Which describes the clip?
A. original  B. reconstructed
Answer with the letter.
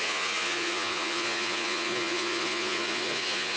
B